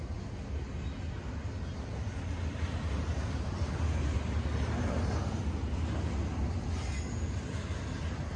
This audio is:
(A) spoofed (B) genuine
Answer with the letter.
B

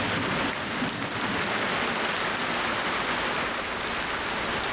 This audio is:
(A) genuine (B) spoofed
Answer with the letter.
A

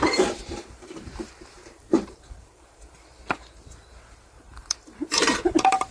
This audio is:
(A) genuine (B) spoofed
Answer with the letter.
B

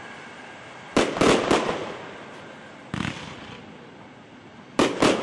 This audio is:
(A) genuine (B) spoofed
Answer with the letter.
A